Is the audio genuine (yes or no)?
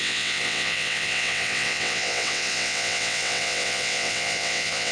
no